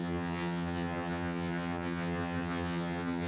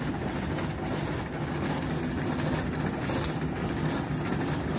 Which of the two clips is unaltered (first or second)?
second